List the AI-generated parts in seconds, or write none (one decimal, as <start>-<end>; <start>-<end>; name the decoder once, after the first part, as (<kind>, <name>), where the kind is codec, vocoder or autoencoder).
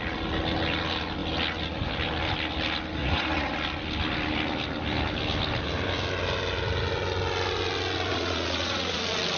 3.0-3.5 (vocoder, Vocos); 8.1-9.0